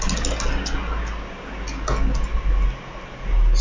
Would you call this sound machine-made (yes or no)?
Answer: no